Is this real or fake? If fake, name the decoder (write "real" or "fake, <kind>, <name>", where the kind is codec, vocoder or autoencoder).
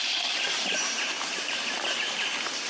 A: fake, vocoder, BigVGAN v2